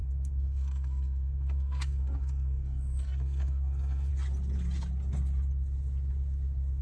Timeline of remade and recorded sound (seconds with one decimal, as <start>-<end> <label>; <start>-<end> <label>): 0.0-4.1 remade; 4.1-6.8 recorded